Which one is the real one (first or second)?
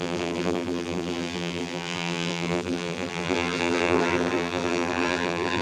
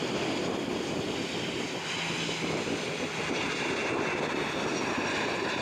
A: second